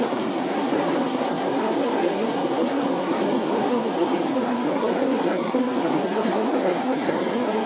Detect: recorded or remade remade